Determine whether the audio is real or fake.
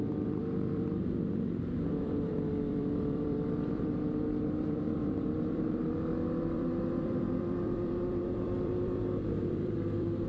fake